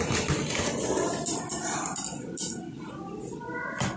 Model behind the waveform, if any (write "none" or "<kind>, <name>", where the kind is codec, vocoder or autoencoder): none